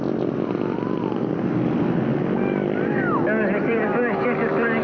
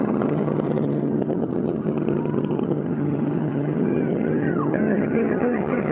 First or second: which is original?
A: first